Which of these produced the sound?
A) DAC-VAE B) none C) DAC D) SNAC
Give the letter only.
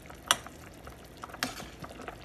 B